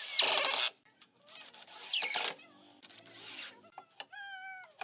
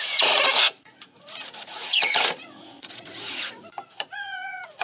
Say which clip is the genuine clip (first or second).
first